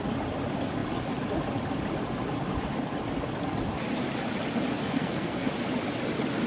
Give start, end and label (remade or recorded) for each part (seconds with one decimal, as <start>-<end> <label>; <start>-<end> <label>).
0.0-4.8 recorded; 4.8-5.5 remade; 5.5-6.5 recorded